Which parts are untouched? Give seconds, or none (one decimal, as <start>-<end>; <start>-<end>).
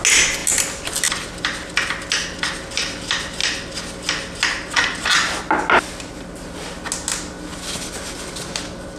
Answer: 0.0-9.0